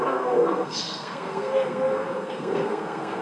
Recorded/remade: remade